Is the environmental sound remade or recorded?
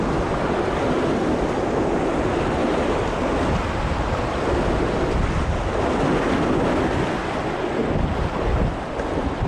recorded